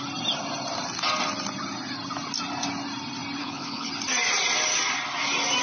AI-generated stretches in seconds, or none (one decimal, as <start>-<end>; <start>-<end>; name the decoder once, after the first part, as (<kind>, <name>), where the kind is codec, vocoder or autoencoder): 3.4-3.9 (codec, HILCodec)